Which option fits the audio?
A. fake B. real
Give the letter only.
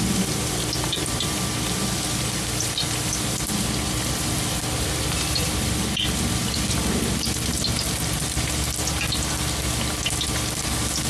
B